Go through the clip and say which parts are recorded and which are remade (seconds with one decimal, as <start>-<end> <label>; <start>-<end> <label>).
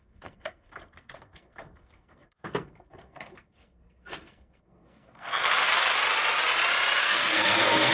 0.0-5.4 remade; 5.4-7.0 recorded; 7.0-7.9 remade